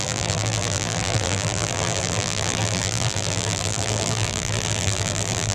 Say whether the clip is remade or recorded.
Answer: remade